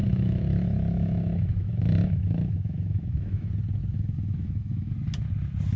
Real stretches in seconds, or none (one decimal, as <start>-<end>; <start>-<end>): 3.5-3.9; 4.9-5.8